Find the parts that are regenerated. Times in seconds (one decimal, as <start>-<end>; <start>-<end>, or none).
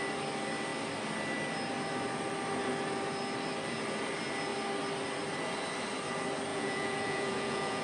6.5-7.8